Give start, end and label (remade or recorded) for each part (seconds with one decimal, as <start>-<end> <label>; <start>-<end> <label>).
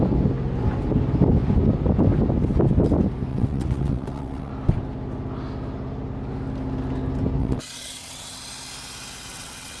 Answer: 0.0-3.3 recorded; 3.3-4.5 remade; 4.5-7.4 recorded; 7.4-8.4 remade; 8.4-9.3 recorded; 9.3-9.8 remade